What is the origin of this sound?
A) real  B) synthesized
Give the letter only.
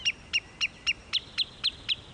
A